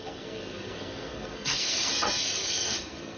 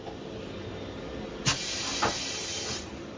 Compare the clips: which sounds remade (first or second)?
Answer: first